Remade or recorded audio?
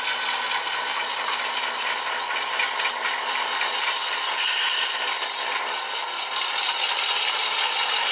recorded